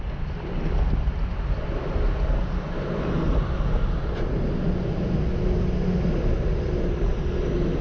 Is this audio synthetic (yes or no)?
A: no